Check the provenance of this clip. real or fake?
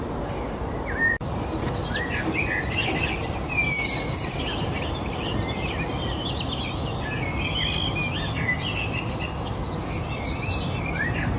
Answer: real